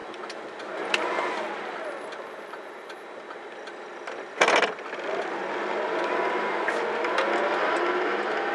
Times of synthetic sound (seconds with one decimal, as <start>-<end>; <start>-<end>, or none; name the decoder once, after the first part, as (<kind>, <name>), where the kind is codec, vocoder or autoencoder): none